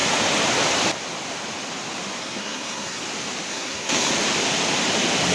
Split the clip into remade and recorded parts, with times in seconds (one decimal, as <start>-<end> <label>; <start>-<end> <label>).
0.0-2.2 recorded; 2.2-3.0 remade; 3.0-3.5 recorded; 3.5-4.1 remade; 4.1-5.3 recorded